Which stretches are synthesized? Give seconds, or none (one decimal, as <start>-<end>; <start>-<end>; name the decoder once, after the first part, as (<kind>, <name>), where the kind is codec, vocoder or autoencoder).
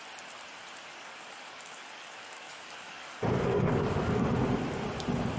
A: 0.9-4.1 (codec, DAC)